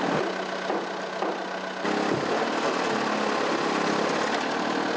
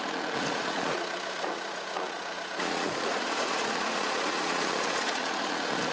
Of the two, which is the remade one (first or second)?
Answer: second